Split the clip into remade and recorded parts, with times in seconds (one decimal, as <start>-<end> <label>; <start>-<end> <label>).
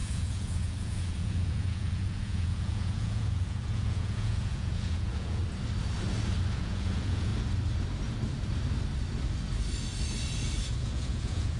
0.0-5.4 remade; 5.4-6.5 recorded; 6.5-7.3 remade; 7.3-10.7 recorded; 10.7-11.6 remade